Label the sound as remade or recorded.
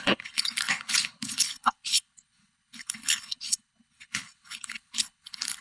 remade